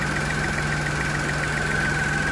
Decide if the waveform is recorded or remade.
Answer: recorded